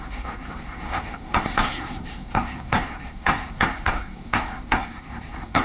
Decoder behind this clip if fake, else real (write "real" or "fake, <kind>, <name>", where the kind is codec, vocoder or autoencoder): fake, codec, SNAC